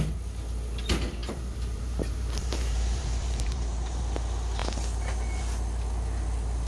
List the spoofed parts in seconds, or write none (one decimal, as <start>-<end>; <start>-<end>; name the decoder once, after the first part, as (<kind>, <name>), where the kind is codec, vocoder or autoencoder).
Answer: 1.2-4.0 (vocoder, BigVGAN v2)